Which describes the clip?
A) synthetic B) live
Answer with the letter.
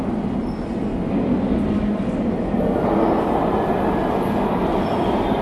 B